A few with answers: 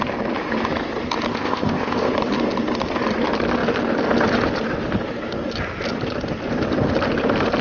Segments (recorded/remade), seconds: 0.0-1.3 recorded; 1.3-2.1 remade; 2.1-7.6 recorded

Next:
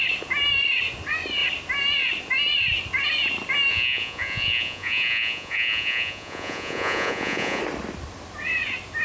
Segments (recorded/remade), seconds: 0.0-3.7 recorded; 3.7-7.6 remade; 7.6-9.0 recorded

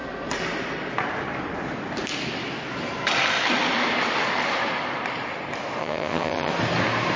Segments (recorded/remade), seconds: 0.0-5.8 recorded; 5.8-6.5 remade; 6.5-7.2 recorded

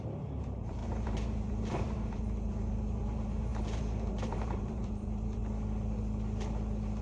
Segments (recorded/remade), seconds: 0.0-5.4 remade; 5.4-7.0 recorded

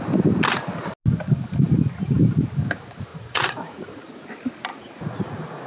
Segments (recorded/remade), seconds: 0.0-3.1 recorded; 3.1-4.0 remade; 4.0-4.7 recorded; 4.7-5.7 remade

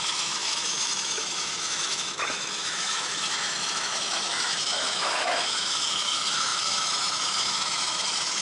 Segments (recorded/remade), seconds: 0.0-8.4 remade